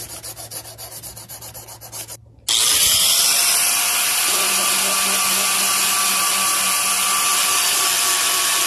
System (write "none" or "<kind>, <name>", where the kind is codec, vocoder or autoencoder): none